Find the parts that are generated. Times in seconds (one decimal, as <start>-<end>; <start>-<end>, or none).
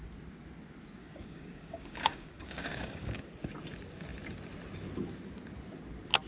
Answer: 1.0-3.3